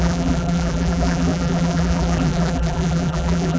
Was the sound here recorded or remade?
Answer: remade